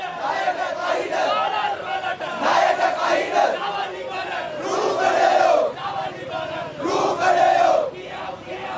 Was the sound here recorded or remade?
recorded